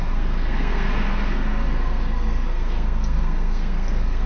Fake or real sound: fake